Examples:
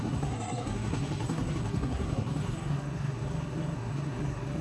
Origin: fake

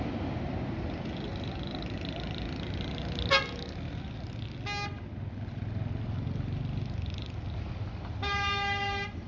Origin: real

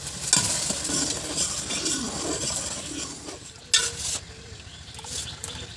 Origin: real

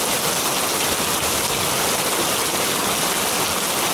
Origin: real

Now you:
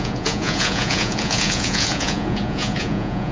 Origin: fake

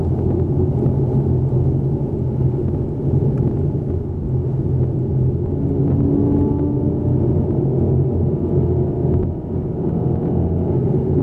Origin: real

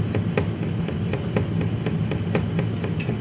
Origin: real